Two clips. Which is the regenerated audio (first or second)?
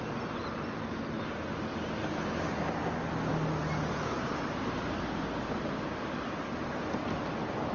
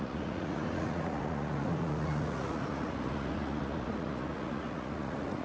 second